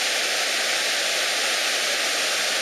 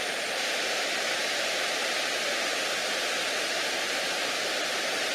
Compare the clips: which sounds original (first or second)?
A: first